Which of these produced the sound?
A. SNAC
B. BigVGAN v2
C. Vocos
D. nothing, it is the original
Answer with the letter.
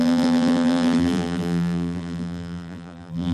B